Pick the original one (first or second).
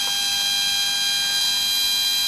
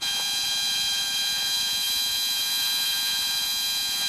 first